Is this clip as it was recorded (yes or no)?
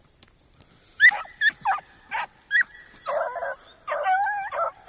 yes